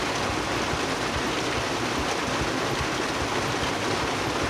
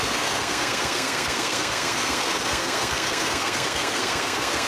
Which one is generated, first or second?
second